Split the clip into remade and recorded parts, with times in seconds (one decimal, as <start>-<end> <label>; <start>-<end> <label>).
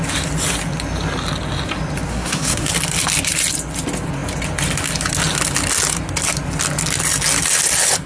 0.0-2.1 recorded; 2.1-2.7 remade; 2.7-8.1 recorded